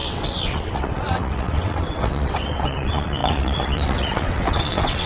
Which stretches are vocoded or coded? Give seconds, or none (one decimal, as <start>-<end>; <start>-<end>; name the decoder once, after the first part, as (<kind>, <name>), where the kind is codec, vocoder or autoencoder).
0.0-5.1 (vocoder, WaveNeXt)